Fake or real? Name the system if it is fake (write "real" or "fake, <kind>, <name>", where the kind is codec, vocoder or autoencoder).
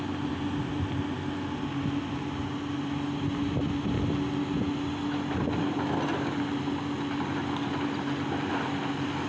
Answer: real